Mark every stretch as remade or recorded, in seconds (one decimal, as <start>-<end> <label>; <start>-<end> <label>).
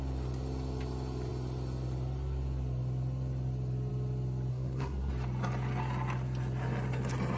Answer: 0.0-4.5 recorded; 4.5-5.1 remade; 5.1-7.4 recorded